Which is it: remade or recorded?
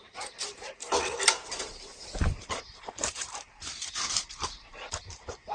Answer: remade